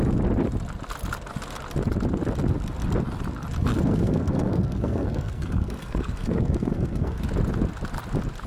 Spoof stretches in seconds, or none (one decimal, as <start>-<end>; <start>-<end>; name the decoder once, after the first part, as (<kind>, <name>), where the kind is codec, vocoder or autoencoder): 3.7-7.2 (codec, SNAC)

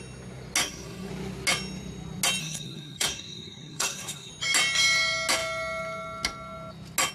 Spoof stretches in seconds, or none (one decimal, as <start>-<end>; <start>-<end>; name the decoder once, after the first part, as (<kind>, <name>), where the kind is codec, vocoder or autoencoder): 0.6-1.1 (codec, SNAC); 2.4-4.3

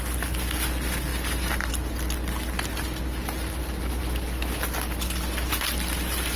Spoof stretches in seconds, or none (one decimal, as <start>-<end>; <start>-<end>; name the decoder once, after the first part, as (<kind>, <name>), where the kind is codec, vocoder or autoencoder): none